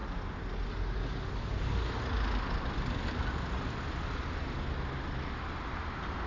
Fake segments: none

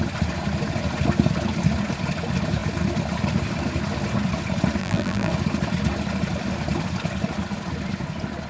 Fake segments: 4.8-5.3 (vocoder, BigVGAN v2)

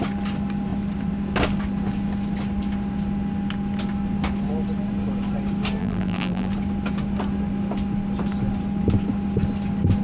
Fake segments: 5.8-6.5 (vocoder, BigVGAN v2)